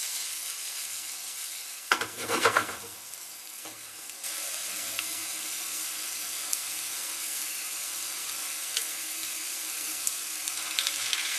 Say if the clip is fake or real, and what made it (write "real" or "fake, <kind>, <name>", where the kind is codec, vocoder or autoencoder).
fake, codec, SNAC